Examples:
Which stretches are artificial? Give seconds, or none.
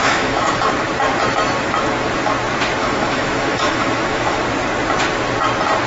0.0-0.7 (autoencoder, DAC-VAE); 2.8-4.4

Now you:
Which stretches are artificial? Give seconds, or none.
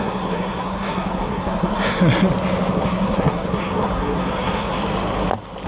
0.0-2.0 (codec, SNAC); 2.7-4.8